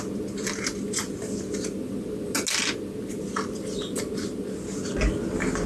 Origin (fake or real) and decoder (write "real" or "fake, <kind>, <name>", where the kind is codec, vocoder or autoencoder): real